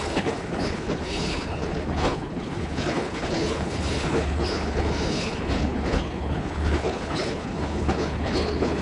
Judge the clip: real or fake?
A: fake